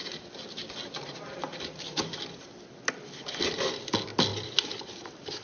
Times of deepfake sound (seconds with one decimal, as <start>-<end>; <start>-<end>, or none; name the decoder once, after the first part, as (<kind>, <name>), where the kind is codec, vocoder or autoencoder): 4.3-5.4 (vocoder, BigVGAN v2)